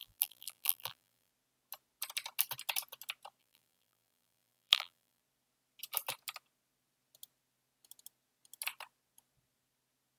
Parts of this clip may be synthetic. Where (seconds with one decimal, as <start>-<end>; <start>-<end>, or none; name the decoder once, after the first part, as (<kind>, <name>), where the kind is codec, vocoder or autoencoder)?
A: 0.0-1.3 (vocoder, BigVGAN v2); 3.4-5.2